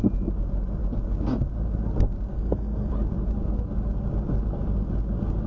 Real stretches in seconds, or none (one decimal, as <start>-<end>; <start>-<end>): 0.0-2.3; 2.9-5.5